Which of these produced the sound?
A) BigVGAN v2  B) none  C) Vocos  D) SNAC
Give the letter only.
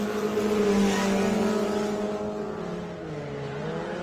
B